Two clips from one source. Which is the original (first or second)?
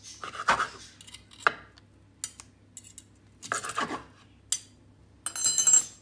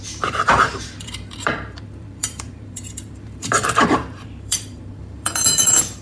first